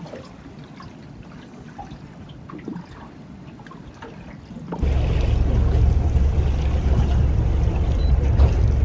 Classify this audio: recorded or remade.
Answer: recorded